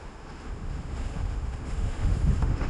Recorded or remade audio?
remade